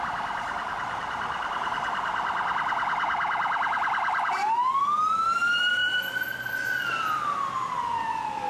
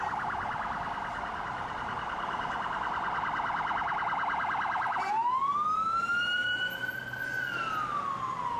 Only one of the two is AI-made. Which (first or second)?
first